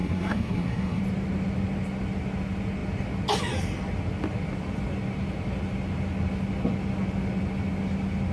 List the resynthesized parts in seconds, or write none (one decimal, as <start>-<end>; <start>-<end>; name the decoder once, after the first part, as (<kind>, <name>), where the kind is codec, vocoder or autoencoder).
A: 0.0-1.0 (codec, SNAC)